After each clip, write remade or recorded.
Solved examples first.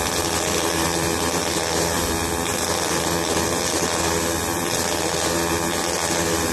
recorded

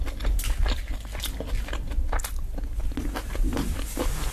recorded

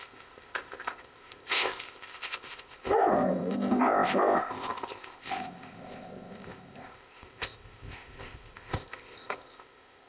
remade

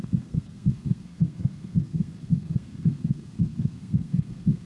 remade